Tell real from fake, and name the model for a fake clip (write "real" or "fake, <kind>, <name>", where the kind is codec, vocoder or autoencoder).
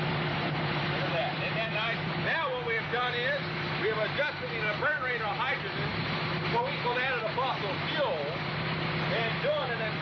real